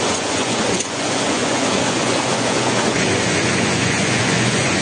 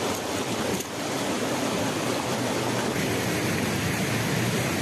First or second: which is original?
second